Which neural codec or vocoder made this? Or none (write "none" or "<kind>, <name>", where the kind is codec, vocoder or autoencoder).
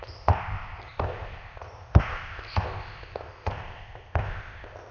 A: codec, ZipCodec